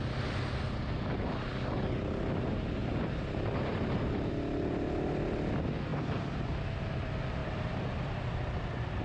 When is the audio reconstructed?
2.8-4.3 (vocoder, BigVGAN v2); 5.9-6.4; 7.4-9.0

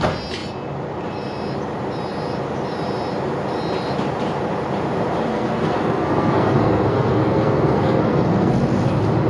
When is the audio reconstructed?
5.3-8.5 (codec, SNAC)

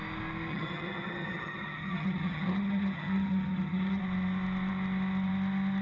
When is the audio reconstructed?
0.5-4.0 (vocoder, HiFi-GAN)

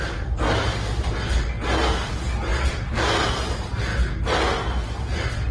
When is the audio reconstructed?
none

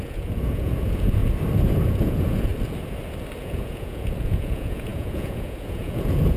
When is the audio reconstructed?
0.0-1.2 (vocoder, Vocos); 1.7-2.5; 3.4-6.4

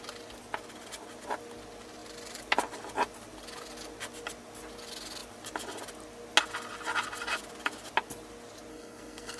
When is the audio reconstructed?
8.7-9.4 (codec, SNAC)

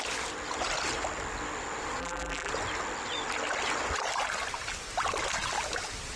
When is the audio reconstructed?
2.0-2.5 (vocoder, BigVGAN v2)

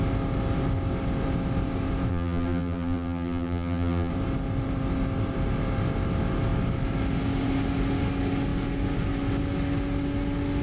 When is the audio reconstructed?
2.1-4.1 (vocoder, BigVGAN v2)